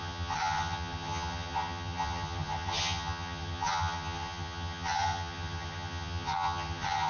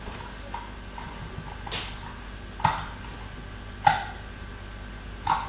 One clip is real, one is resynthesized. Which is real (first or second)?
second